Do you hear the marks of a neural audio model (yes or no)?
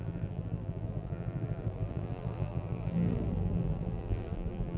yes